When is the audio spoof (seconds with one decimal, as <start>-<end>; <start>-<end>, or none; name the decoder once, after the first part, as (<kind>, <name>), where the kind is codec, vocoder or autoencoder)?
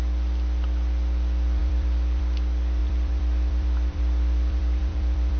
1.6-2.2 (vocoder, BigVGAN v2); 2.8-5.4